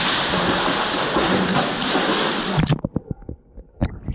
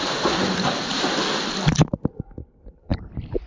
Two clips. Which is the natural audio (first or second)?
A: first